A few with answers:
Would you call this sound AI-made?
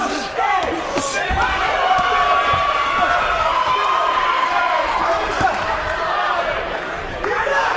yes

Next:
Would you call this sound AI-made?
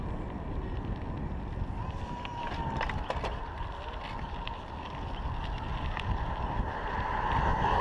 no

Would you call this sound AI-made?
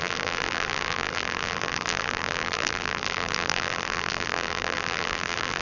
yes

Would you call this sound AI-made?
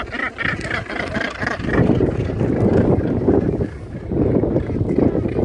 no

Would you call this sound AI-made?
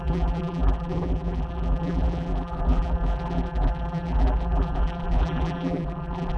yes